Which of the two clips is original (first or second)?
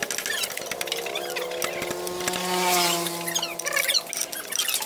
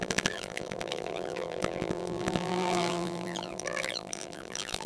first